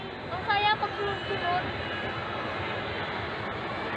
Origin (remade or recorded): recorded